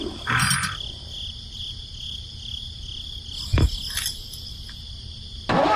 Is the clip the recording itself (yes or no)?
yes